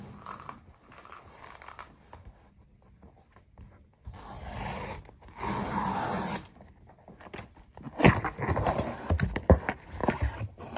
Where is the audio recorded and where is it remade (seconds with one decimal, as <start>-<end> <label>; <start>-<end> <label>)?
0.0-10.8 recorded